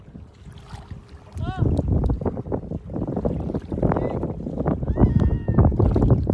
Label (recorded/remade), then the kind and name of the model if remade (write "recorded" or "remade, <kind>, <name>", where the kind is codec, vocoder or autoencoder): recorded